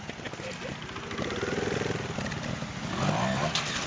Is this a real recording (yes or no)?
yes